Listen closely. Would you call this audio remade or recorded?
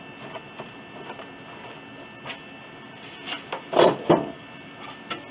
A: recorded